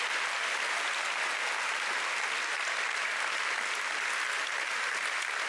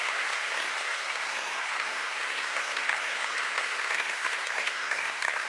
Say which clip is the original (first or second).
first